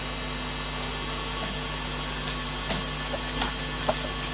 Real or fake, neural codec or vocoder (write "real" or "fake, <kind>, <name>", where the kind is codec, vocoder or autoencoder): real